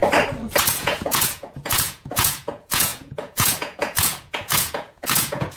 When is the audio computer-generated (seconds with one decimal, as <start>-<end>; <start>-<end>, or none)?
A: 0.7-5.6